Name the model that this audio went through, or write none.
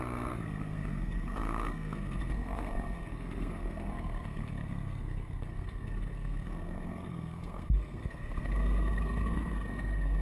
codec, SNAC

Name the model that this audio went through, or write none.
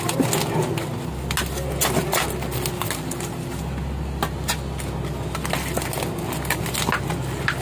none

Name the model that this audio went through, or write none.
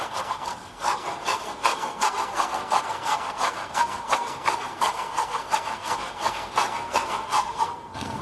codec, SNAC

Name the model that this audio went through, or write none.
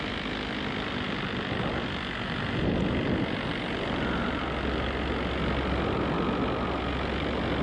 none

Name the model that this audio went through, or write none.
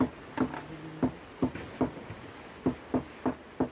none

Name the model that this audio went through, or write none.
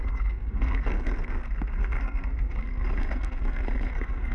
codec, SNAC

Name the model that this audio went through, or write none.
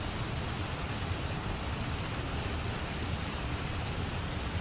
none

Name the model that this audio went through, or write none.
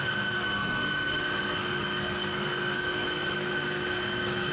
codec, SNAC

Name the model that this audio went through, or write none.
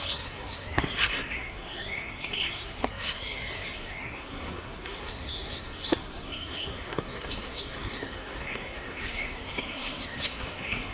codec, SNAC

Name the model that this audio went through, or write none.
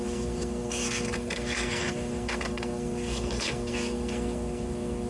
codec, SNAC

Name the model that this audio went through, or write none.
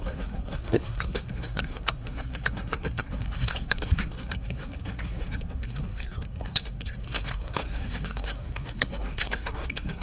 codec, SNAC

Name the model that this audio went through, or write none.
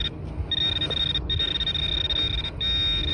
none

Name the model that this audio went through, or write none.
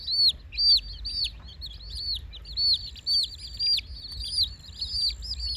none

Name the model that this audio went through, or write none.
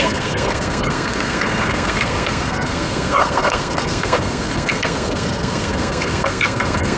codec, SNAC